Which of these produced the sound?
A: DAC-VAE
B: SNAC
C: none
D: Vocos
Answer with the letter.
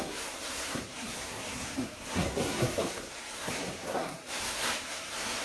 B